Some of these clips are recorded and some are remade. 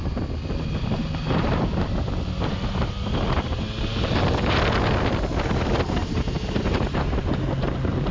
recorded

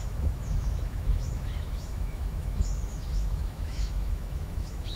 remade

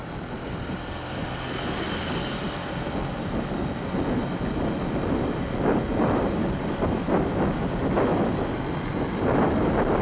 recorded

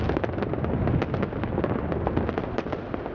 recorded